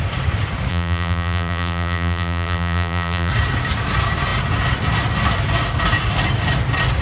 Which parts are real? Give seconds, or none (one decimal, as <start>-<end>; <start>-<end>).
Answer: 0.0-0.7; 3.3-7.0